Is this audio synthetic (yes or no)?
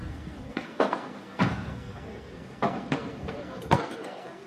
yes